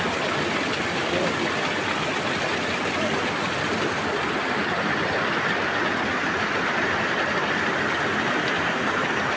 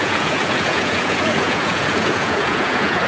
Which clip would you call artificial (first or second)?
second